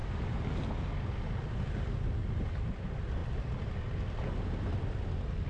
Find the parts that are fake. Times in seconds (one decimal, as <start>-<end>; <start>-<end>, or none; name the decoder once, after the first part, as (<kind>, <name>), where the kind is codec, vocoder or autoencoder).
3.2-4.3 (vocoder, BigVGAN v2)